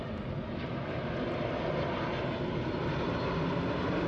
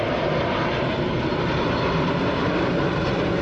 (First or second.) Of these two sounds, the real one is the first